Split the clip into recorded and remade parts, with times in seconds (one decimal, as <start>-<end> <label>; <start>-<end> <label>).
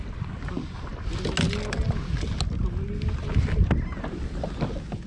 0.0-5.1 recorded